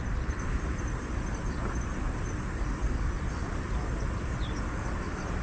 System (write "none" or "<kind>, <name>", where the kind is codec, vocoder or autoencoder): none